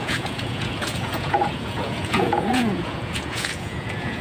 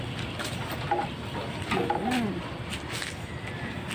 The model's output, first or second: first